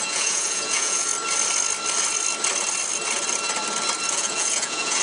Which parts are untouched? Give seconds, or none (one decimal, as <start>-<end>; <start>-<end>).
1.1-4.1